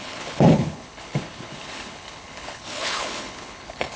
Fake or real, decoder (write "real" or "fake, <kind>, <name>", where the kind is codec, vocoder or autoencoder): fake, codec, HILCodec